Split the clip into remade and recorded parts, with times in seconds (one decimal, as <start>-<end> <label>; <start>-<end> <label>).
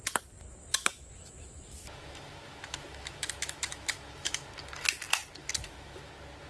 0.0-0.6 recorded; 0.6-4.5 remade; 4.5-5.4 recorded; 5.4-6.1 remade; 6.1-6.5 recorded